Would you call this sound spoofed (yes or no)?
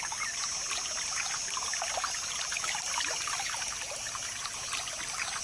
no